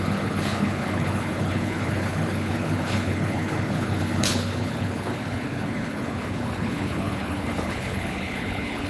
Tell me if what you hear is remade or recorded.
remade